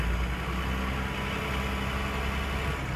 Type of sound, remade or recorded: recorded